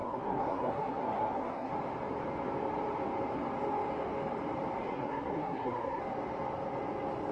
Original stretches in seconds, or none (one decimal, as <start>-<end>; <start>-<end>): 1.7-4.8; 6.0-7.3